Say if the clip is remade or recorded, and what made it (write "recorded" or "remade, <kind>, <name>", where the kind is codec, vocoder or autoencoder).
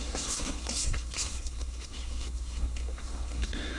remade, codec, SNAC